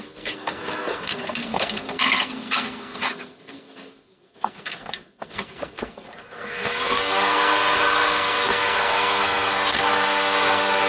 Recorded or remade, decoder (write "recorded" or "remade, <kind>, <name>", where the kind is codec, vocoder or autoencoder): remade, codec, SNAC